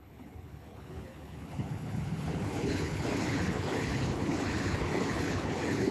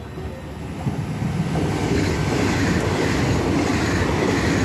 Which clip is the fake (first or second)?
first